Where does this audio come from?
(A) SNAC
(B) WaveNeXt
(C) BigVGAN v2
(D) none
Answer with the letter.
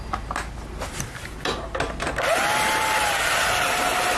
D